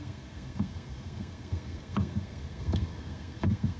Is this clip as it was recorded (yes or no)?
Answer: no